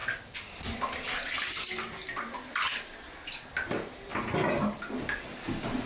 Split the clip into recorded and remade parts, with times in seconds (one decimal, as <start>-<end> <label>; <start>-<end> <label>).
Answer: 0.0-5.9 recorded